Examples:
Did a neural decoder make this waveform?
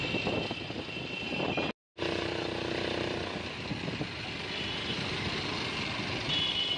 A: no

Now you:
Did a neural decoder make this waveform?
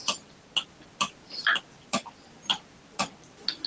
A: no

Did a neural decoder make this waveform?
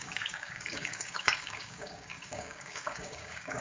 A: yes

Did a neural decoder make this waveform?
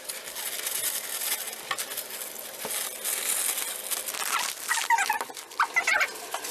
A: no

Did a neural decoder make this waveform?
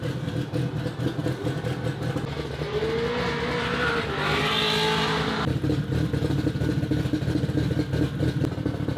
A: no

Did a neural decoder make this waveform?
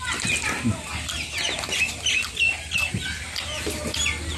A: no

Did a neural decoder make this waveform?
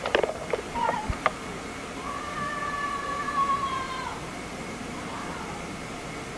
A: yes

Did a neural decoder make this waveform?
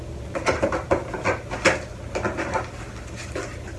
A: no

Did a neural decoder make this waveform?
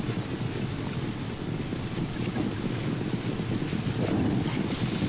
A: no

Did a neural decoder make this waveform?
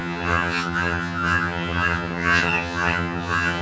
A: yes